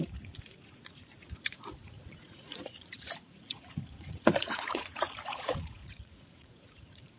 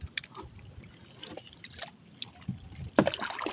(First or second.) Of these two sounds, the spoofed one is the first